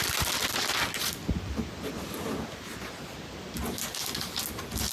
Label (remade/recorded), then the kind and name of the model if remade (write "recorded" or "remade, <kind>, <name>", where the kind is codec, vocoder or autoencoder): recorded